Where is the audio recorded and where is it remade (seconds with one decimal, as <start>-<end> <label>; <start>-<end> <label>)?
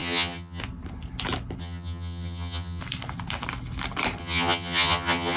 0.0-0.6 remade; 0.6-1.6 recorded; 1.6-2.8 remade; 2.8-4.2 recorded; 4.2-5.4 remade